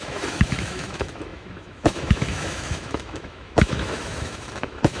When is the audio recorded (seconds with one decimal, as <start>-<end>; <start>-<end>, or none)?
none